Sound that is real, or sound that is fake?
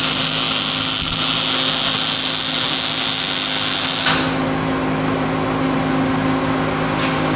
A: real